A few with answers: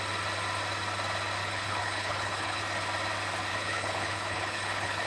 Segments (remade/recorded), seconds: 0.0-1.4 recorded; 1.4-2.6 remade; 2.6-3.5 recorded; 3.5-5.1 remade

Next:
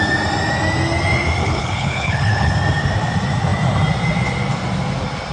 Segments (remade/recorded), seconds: 0.0-1.4 recorded; 1.4-2.5 remade; 2.5-5.3 recorded

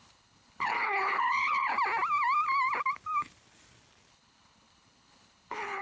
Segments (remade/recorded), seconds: 0.0-1.7 remade; 1.7-4.1 recorded; 4.1-5.8 remade

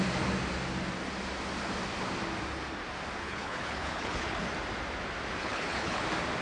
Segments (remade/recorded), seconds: 0.0-3.2 recorded; 3.2-4.4 remade; 4.4-5.4 recorded; 5.4-6.0 remade; 6.0-6.4 recorded

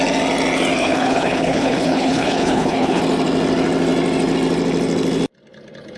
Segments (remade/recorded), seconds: 0.0-0.8 recorded; 0.8-3.0 remade; 3.0-6.0 recorded